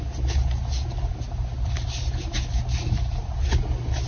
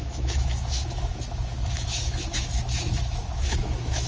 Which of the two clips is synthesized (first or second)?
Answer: second